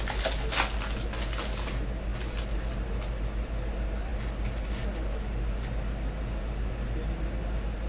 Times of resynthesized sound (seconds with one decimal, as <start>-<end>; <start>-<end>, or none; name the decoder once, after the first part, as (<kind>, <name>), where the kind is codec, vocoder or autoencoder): none